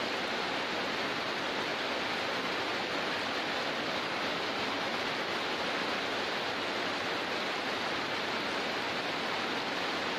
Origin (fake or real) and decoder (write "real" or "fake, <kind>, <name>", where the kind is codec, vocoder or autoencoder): real